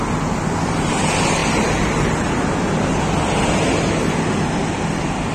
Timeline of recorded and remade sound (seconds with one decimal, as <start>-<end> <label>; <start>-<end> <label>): 0.0-1.4 recorded; 1.4-2.3 remade; 2.3-5.3 recorded